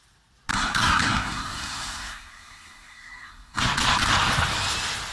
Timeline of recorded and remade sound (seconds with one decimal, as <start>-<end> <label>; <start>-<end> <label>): 0.0-0.5 recorded; 0.5-3.6 remade; 3.6-5.1 recorded